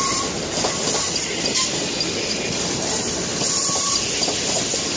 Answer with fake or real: real